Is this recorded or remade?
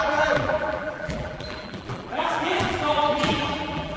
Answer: remade